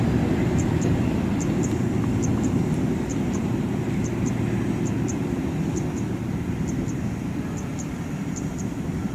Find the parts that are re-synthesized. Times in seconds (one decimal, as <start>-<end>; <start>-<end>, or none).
none